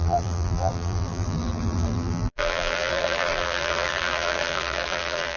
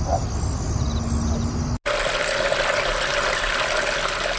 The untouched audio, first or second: second